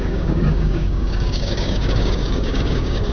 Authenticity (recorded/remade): remade